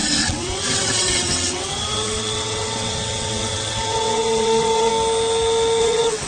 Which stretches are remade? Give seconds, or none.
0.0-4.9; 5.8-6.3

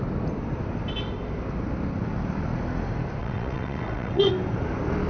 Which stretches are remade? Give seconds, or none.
3.2-4.3

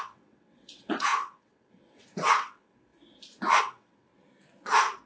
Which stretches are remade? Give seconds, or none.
0.0-2.9; 3.6-4.1

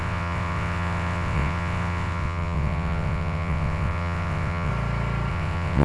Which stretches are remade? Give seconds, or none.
0.0-4.7; 5.3-5.8

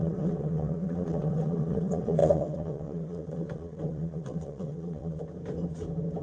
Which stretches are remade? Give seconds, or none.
0.0-5.2